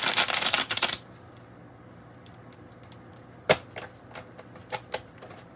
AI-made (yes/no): no